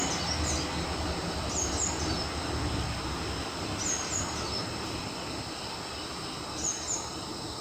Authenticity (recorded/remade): recorded